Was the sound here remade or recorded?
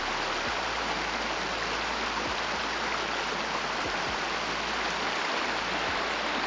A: recorded